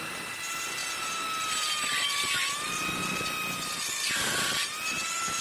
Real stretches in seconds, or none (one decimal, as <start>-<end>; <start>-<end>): 0.0-0.8; 2.7-5.4